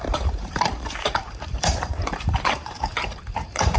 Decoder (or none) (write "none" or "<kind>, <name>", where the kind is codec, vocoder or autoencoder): vocoder, BigVGAN v2